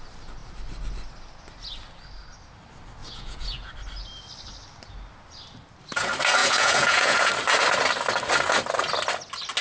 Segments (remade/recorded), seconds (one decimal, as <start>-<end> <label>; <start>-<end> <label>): 0.0-3.0 recorded; 3.0-3.7 remade; 3.7-6.4 recorded; 6.4-7.3 remade; 7.3-9.6 recorded